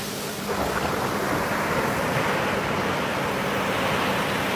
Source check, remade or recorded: remade